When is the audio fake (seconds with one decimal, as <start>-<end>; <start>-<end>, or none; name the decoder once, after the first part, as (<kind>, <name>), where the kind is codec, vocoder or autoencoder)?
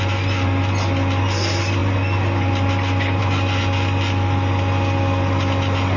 none